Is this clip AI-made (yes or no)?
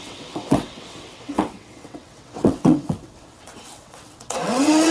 yes